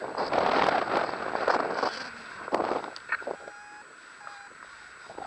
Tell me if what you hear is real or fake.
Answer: real